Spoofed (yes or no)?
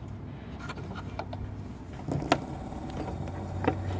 no